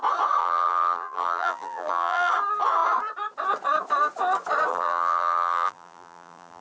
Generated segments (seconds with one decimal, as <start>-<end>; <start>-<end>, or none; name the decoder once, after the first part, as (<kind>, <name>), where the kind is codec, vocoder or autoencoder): 0.4-2.3 (vocoder, BigVGAN v2); 4.7-6.6